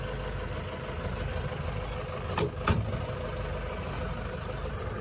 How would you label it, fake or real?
real